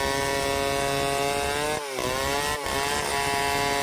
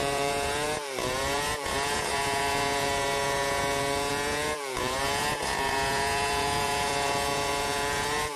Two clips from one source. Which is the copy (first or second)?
second